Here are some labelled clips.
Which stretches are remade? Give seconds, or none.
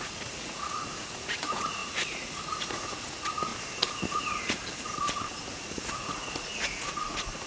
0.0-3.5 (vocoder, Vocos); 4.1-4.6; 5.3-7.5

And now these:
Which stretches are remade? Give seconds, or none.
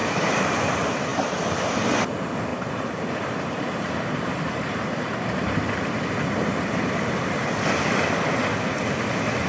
0.0-0.7 (vocoder, BigVGAN v2); 1.1-1.8; 2.5-6.3